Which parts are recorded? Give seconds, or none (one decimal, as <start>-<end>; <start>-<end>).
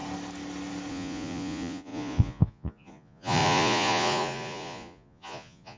0.0-0.9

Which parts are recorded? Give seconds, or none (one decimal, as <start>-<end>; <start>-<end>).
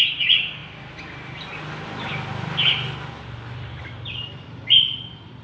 0.6-3.8